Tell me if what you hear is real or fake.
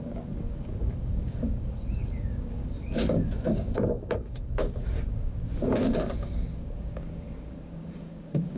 fake